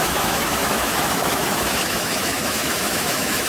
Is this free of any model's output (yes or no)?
no